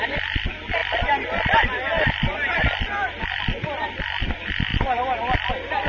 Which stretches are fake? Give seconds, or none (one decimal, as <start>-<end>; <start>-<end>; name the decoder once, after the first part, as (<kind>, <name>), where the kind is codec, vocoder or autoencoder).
none